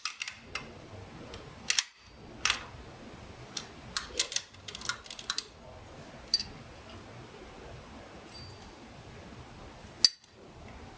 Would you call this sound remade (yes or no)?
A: no